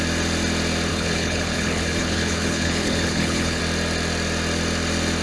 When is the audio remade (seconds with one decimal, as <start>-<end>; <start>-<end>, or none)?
0.9-3.6